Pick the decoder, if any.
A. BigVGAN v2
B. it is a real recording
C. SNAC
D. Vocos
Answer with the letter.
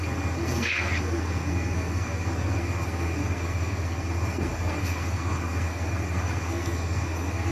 C